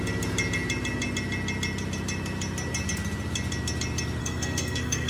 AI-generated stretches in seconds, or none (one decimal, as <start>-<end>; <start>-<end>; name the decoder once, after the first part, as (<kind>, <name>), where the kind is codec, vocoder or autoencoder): 4.2-5.1 (codec, SNAC)